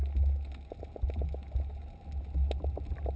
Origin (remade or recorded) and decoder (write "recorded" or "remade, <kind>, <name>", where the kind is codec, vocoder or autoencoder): recorded